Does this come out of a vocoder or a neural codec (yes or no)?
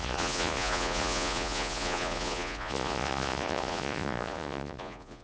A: yes